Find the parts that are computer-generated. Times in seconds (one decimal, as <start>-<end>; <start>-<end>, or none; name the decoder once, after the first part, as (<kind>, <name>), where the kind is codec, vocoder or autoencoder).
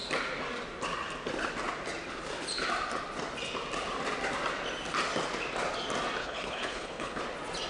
6.2-7.2 (codec, HILCodec)